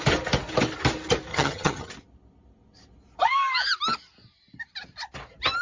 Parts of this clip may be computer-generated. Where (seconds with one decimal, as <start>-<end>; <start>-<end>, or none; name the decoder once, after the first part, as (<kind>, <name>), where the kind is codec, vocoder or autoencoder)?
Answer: 1.3-1.9 (vocoder, HiFi-GAN)